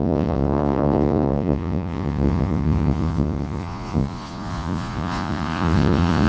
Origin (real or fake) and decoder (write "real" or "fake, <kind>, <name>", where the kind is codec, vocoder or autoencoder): fake, vocoder, Vocos